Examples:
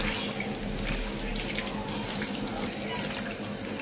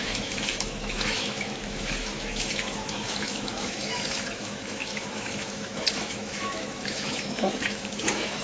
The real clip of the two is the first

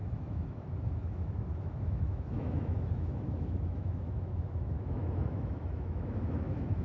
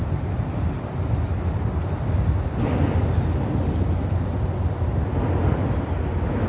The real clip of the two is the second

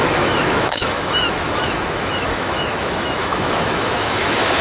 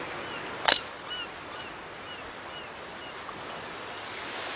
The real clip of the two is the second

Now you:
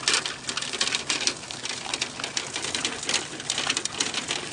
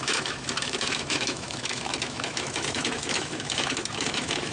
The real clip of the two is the first